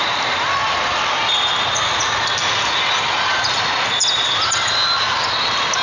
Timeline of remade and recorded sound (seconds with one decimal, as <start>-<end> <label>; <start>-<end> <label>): 0.0-5.8 recorded

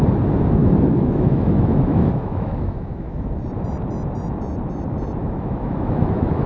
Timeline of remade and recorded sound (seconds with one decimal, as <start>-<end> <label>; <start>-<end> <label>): 0.0-0.6 recorded; 0.6-3.3 remade; 3.3-5.2 recorded; 5.2-6.5 remade

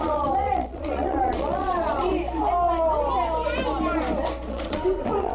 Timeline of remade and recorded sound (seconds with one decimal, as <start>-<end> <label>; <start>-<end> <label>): 0.0-2.1 remade; 2.1-4.5 recorded; 4.5-5.3 remade

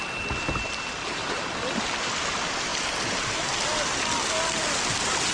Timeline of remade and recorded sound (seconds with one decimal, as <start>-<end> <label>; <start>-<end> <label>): 0.0-1.2 recorded; 1.2-1.8 remade; 1.8-5.3 recorded